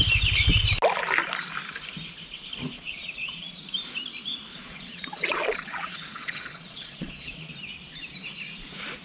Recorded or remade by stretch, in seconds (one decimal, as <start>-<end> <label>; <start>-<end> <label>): 0.0-2.7 recorded; 2.7-3.6 remade; 3.6-4.5 recorded; 4.5-7.5 remade; 7.5-9.0 recorded